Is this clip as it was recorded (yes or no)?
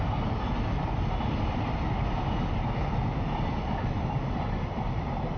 yes